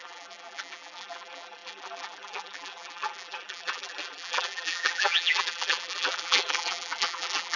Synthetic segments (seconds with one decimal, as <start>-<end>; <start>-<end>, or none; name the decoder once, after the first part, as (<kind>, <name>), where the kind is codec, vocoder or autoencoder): 0.0-7.6 (vocoder, BigVGAN v2)